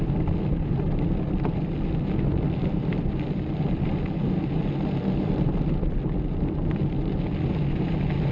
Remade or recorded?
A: recorded